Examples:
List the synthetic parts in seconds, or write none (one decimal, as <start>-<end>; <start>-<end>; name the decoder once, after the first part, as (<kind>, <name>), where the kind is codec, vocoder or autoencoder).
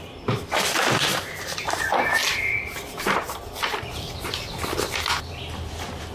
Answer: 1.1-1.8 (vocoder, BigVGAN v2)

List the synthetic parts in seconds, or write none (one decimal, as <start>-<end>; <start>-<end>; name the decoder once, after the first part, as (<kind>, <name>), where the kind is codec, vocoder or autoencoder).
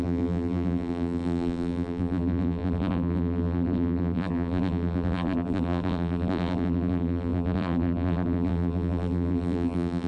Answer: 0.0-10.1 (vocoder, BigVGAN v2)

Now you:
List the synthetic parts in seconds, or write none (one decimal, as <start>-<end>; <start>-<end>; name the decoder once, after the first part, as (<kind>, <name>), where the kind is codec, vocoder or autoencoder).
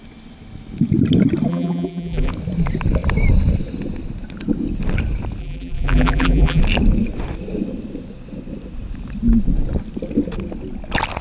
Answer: 1.5-2.3 (vocoder, BigVGAN v2); 5.4-6.6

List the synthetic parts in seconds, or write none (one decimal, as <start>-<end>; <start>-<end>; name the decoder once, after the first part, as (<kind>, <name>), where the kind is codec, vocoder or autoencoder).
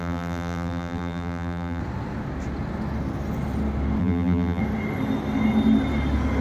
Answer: 0.0-1.8 (vocoder, BigVGAN v2); 4.0-4.6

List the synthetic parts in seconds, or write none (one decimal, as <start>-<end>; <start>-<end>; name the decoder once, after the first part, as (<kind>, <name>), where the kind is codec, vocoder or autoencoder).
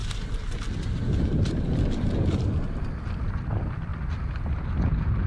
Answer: 1.3-3.9 (vocoder, BigVGAN v2)